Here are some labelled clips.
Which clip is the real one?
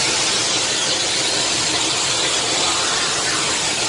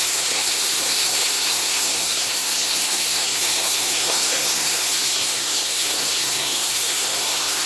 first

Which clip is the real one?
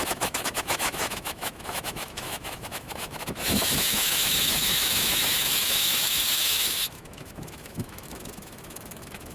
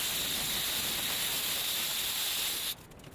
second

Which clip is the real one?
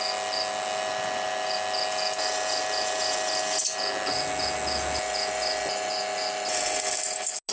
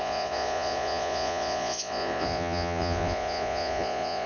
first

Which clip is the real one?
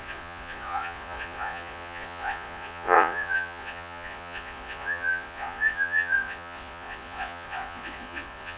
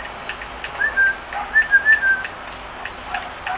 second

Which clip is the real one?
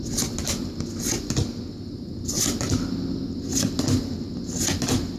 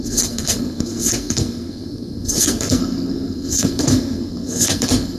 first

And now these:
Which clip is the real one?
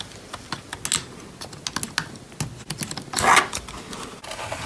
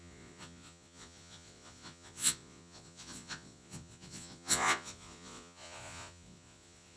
first